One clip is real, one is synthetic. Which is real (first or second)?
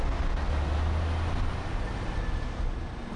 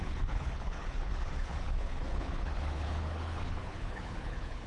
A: first